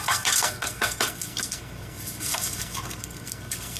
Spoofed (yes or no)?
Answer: yes